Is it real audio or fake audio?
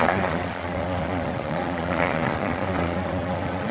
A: fake